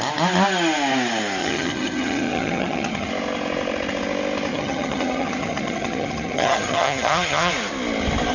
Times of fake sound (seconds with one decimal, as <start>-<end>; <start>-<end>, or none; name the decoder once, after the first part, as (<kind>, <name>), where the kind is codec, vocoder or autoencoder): 1.4-3.1 (vocoder, HiFi-GAN); 4.5-7.5